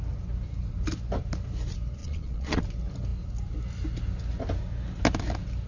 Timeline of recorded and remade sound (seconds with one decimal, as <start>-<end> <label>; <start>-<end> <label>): 0.0-2.0 recorded; 2.0-2.6 remade; 2.6-5.7 recorded